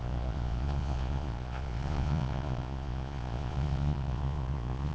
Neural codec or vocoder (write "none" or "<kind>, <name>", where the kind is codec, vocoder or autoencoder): vocoder, Vocos